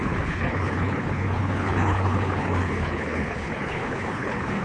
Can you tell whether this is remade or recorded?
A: remade